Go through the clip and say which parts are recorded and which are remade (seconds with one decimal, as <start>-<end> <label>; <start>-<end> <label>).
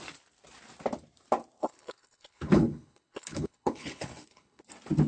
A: 0.0-1.6 recorded; 1.6-4.6 remade; 4.6-5.1 recorded